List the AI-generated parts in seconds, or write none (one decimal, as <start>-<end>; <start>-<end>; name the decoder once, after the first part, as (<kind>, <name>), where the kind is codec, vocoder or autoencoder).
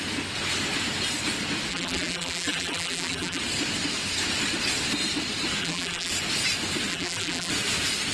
1.7-3.4 (vocoder, BigVGAN v2); 5.6-6.1; 6.9-7.5